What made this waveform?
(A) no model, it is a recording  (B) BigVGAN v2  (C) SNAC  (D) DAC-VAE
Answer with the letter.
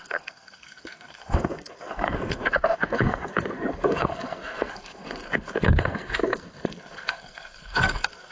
C